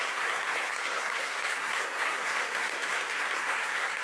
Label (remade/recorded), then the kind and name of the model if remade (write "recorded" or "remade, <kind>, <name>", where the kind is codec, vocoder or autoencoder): remade, codec, SNAC